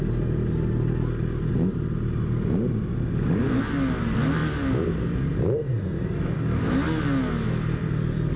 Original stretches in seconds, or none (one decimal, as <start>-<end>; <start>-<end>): 0.0-8.4

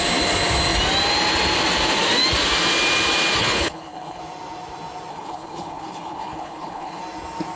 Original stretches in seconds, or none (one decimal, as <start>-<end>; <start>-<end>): 0.0-3.4; 4.2-5.1; 7.0-7.6

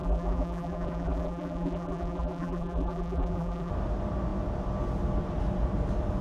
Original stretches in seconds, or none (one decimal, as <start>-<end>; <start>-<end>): 3.7-6.2

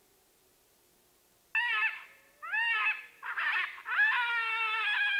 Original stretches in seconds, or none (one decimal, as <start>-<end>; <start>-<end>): 0.0-5.2

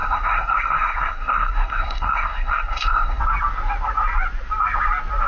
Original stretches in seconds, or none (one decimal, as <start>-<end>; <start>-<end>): 3.2-5.3

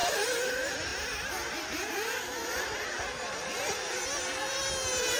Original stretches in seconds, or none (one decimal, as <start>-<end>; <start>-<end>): 0.0-5.2